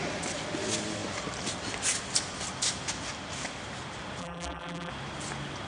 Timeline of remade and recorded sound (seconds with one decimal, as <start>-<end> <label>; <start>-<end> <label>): 0.0-4.2 recorded; 4.2-4.9 remade; 4.9-5.7 recorded